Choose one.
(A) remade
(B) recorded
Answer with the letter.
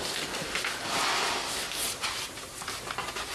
B